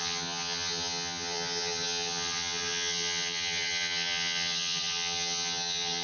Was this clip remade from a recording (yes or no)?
yes